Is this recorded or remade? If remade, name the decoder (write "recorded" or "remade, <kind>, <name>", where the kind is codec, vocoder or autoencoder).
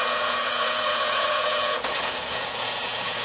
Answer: remade, vocoder, Vocos